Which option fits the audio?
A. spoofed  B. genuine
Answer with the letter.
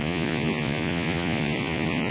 A